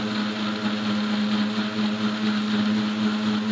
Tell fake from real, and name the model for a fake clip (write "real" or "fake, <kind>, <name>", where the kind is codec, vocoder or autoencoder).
real